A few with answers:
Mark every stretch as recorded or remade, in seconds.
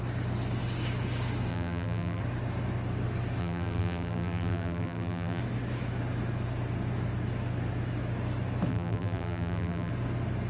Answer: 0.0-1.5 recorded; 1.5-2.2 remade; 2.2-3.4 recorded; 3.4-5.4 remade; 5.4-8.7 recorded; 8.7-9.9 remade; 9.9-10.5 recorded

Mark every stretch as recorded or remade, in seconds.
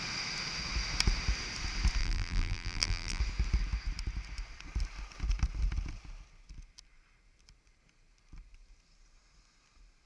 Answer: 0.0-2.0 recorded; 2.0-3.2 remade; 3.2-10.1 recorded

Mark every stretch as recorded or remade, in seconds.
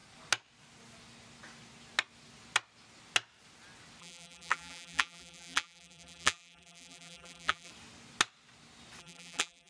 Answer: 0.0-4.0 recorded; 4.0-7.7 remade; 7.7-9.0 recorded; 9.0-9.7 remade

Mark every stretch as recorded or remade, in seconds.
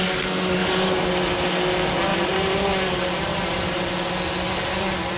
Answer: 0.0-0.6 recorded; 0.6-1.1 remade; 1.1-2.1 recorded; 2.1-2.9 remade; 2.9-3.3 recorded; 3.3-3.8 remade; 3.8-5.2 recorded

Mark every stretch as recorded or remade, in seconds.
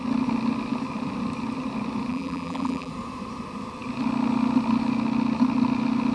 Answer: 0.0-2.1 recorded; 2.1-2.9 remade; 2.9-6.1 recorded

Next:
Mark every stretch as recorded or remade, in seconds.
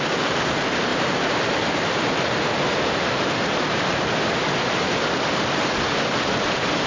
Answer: 0.0-0.9 recorded; 0.9-4.1 remade; 4.1-6.9 recorded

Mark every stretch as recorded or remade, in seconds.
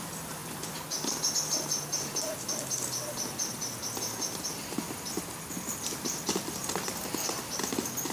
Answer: 0.0-8.1 recorded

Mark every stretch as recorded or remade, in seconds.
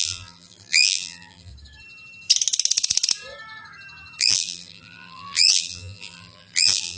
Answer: 0.0-1.5 remade; 1.5-4.2 recorded; 4.2-7.0 remade